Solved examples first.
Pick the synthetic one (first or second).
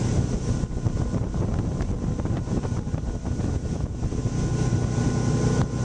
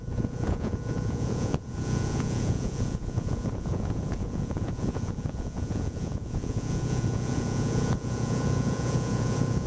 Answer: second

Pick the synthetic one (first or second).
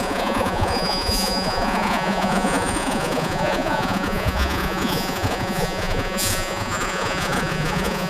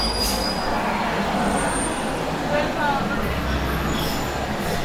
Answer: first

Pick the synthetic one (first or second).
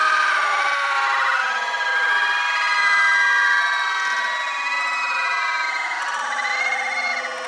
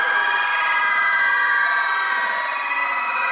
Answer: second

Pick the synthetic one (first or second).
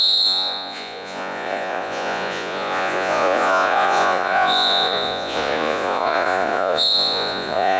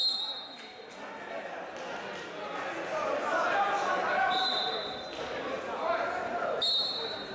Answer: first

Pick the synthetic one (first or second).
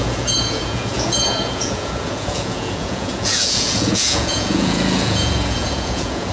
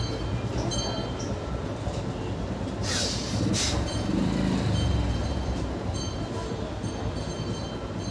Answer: first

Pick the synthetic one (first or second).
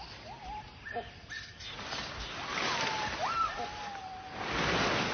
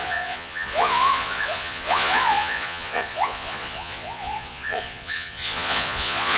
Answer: second